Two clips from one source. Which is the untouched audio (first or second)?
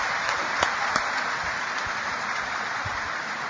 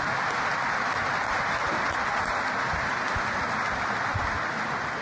second